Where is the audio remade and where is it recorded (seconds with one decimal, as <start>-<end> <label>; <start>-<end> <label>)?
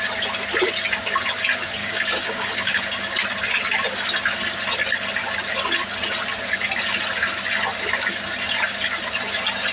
0.0-1.8 recorded; 1.8-2.8 remade; 2.8-9.7 recorded